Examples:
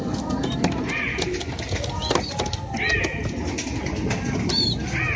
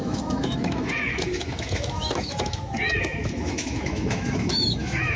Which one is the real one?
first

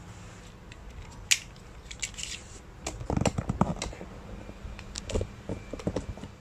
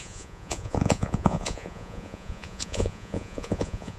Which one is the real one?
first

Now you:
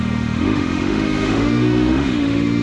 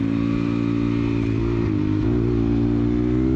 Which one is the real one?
second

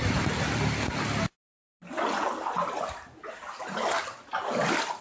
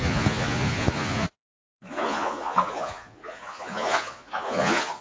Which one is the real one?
first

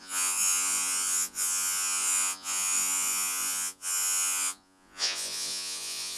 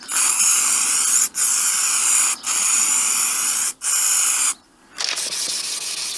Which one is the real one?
second